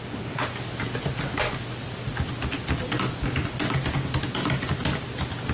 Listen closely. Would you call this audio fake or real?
real